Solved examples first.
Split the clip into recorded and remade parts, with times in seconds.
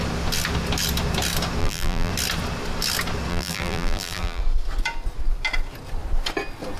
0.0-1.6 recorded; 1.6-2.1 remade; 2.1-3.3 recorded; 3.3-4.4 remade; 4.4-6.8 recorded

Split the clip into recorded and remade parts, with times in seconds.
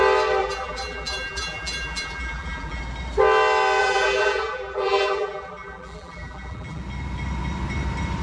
0.0-0.4 recorded; 0.4-2.8 remade; 2.8-3.8 recorded; 3.8-6.8 remade; 6.8-8.2 recorded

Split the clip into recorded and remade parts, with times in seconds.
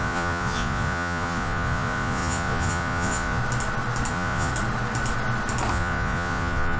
0.0-3.4 remade; 3.4-4.1 recorded; 4.1-4.5 remade; 4.5-5.7 recorded; 5.7-6.8 remade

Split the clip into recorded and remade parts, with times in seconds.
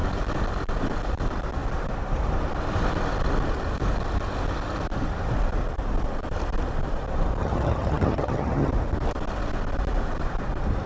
0.0-7.4 recorded; 7.4-8.7 remade; 8.7-10.9 recorded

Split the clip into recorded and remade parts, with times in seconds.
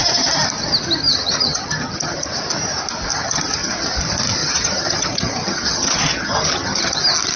0.0-1.0 recorded; 1.0-2.3 remade; 2.3-3.1 recorded; 3.1-3.7 remade; 3.7-4.4 recorded; 4.4-7.0 remade; 7.0-7.4 recorded